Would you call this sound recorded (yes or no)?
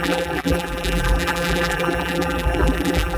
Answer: no